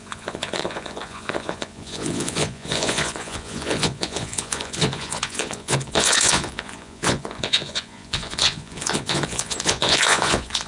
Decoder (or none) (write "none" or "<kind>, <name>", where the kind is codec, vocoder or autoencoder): vocoder, Vocos